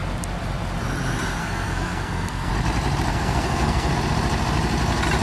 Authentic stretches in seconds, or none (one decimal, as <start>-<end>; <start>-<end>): 0.0-1.4; 2.5-3.1; 3.9-5.2